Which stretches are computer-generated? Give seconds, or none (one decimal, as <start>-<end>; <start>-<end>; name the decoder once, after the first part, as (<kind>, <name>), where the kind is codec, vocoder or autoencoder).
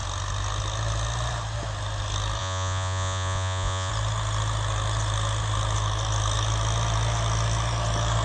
2.4-3.9 (vocoder, Vocos)